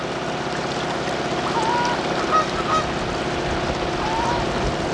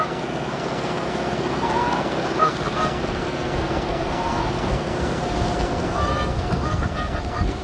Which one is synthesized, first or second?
second